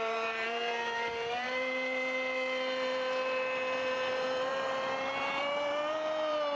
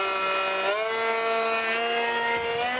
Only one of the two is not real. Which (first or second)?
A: first